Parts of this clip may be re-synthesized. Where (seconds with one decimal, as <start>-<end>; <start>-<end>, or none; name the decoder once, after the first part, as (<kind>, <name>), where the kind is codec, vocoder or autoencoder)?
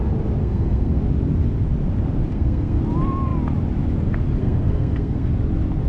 0.4-1.0 (codec, SNAC); 2.3-2.8; 4.4-5.3